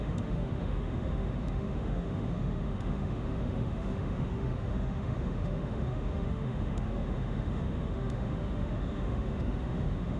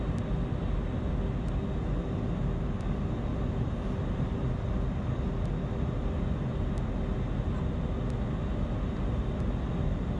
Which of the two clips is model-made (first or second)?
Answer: first